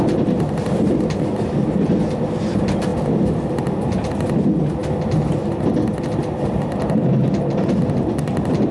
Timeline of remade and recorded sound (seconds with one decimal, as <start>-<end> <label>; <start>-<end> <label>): 0.0-8.7 recorded